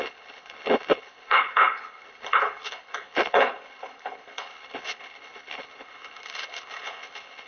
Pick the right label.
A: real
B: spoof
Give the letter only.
B